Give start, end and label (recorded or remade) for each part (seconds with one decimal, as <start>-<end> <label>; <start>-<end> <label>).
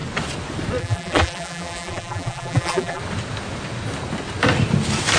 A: 0.0-0.8 recorded; 0.8-3.0 remade; 3.0-5.2 recorded